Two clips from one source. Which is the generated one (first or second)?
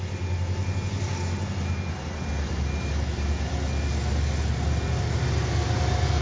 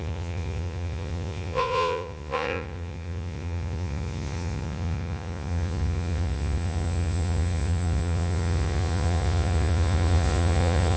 second